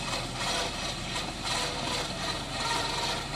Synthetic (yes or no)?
no